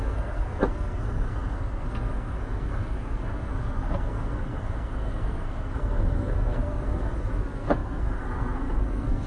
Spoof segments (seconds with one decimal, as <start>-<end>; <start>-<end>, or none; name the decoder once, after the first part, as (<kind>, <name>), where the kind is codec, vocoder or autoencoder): 0.0-9.3 (codec, SNAC)

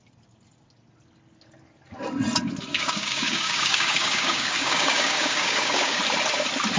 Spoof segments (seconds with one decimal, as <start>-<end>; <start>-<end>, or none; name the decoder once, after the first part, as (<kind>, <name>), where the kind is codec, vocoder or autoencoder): 2.7-6.0 (codec, DAC)

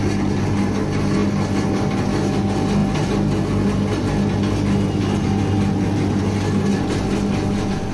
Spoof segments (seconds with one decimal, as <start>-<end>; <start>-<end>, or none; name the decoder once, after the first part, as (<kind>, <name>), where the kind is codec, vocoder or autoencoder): none

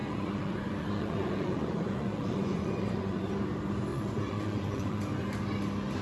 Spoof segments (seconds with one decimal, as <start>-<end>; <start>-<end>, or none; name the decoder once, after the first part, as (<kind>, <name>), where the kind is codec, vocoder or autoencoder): 0.0-3.3 (vocoder, Vocos); 3.9-5.0

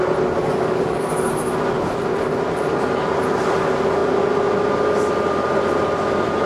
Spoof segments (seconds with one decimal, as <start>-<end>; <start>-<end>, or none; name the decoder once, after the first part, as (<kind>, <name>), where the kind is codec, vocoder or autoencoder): 0.4-1.1 (codec, DAC)

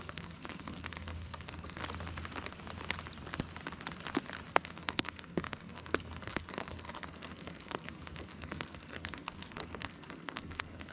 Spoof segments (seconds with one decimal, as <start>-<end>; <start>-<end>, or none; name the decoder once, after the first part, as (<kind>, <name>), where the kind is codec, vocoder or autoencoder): 0.0-1.8 (codec, SNAC); 4.5-10.9

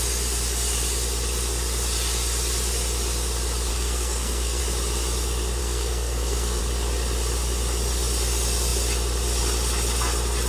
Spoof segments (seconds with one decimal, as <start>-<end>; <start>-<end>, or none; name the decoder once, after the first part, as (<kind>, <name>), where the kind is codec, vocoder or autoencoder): 3.7-4.6 (codec, SNAC); 5.6-6.6

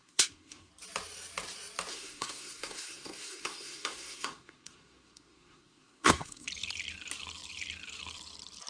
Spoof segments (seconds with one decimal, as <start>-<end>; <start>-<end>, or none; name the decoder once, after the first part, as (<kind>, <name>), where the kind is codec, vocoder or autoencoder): 0.0-0.7 (codec, SNAC); 1.9-6.5